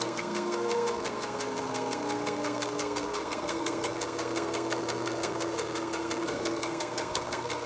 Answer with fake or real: fake